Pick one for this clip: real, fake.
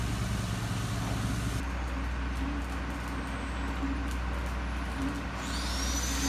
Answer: real